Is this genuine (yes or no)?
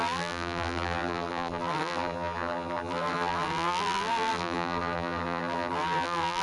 no